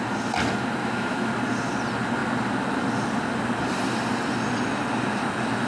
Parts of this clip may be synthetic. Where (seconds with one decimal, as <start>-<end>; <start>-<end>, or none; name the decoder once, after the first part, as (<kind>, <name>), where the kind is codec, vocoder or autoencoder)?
0.8-1.3 (autoencoder, DAC-VAE)